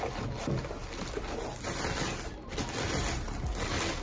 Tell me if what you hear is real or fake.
real